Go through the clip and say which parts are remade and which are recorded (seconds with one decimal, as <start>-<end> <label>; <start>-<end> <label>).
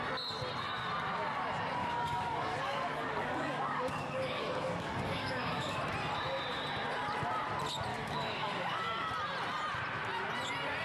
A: 0.0-1.8 recorded; 1.8-5.8 remade; 5.8-7.9 recorded; 7.9-9.1 remade; 9.1-10.8 recorded